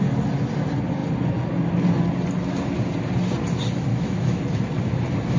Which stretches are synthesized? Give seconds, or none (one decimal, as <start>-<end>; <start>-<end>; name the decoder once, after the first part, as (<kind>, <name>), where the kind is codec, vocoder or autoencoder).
3.9-4.4 (autoencoder, DAC-VAE)